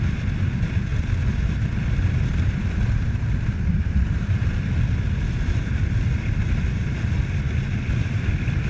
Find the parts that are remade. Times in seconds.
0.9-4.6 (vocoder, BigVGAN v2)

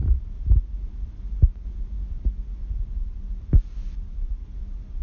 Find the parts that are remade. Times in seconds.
none

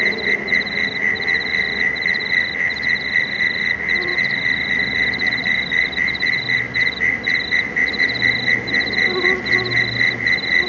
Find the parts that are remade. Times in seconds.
4.1-8.0 (vocoder, BigVGAN v2)